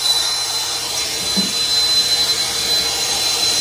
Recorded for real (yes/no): yes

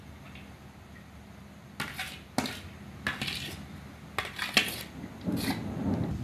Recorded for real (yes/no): yes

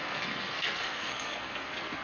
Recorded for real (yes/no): no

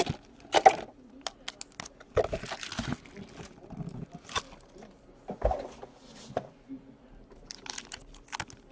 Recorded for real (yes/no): yes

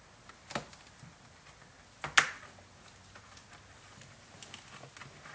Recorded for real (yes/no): yes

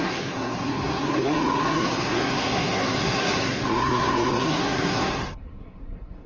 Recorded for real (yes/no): no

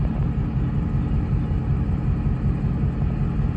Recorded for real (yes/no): yes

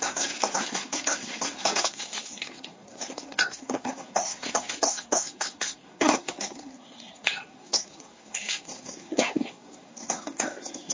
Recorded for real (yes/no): no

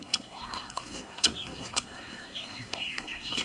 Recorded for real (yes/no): no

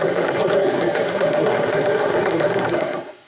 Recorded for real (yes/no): no